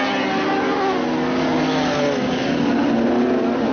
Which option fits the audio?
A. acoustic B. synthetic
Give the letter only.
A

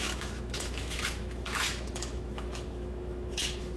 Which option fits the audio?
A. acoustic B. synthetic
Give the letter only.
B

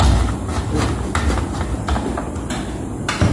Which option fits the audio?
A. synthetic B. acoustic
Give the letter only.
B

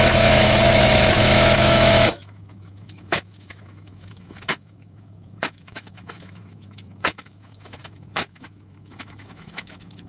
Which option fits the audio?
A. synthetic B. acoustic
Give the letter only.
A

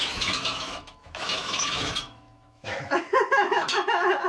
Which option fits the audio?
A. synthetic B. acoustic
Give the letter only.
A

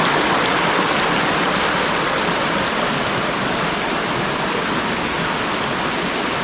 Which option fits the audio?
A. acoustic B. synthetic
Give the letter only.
A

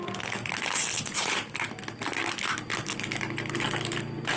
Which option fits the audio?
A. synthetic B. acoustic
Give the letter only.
B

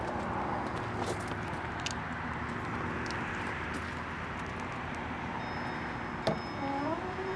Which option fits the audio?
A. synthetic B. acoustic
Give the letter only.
B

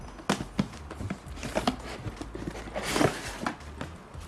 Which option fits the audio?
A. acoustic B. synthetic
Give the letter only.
A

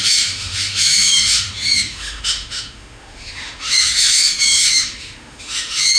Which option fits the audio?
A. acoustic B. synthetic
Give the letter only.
B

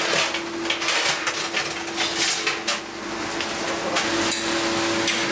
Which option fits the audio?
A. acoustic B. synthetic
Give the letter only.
A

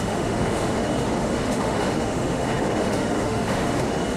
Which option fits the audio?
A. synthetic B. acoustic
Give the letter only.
A